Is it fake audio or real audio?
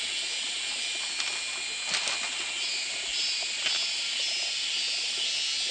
real